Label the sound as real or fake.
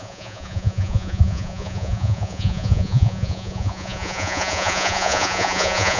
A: fake